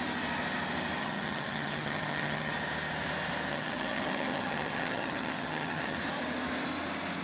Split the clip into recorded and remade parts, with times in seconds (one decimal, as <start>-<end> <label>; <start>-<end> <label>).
0.0-1.0 recorded; 1.0-2.5 remade; 2.5-3.5 recorded; 3.5-6.0 remade; 6.0-7.2 recorded